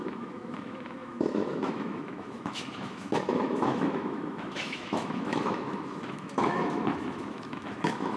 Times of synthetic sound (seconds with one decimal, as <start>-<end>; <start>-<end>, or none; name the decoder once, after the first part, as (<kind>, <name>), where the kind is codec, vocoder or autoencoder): 0.0-8.2 (autoencoder, DAC-VAE)